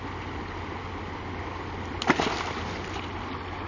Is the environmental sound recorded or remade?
recorded